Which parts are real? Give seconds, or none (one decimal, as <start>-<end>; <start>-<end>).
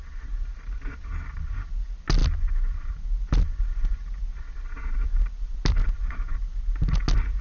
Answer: 0.0-7.4